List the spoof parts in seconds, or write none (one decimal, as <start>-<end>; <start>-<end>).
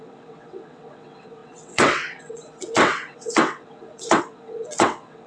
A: 0.0-5.3